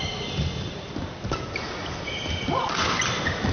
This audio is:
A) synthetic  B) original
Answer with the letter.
B